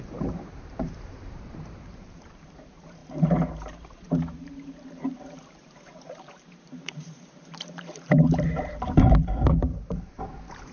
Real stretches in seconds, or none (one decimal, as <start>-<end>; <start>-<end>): none